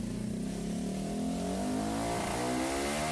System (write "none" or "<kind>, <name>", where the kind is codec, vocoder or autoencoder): none